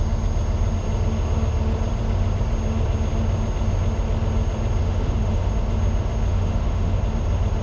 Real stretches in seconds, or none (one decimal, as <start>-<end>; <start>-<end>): 0.0-4.8; 5.5-6.3; 7.0-7.6